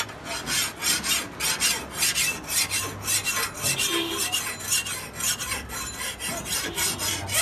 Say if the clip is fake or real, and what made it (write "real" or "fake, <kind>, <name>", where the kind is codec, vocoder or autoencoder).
real